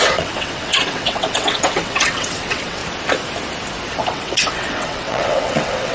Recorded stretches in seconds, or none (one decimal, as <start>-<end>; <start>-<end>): 2.8-4.1